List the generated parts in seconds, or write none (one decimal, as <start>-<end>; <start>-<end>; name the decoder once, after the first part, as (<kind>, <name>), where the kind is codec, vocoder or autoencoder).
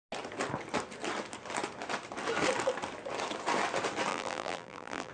4.1-5.1 (vocoder, BigVGAN v2)